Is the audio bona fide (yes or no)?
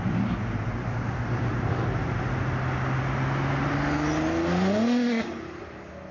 yes